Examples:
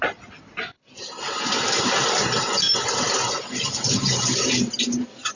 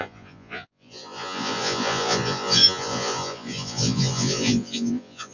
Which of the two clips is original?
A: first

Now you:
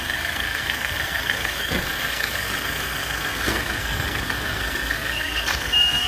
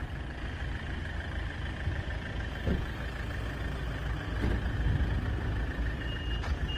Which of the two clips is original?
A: second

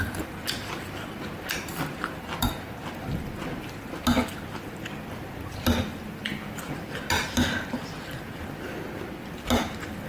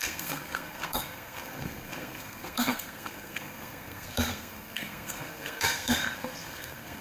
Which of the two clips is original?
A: first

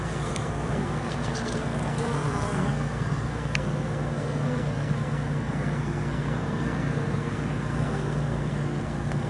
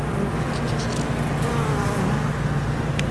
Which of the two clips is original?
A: second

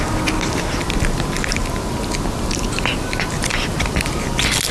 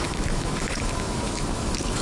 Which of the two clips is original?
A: first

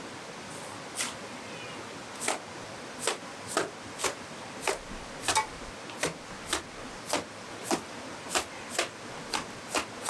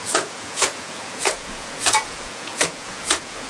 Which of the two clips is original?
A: first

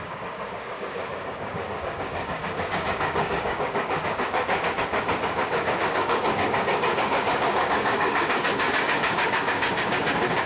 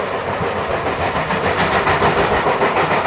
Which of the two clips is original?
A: second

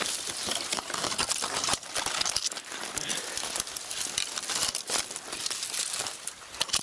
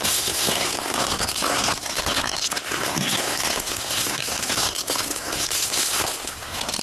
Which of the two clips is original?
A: first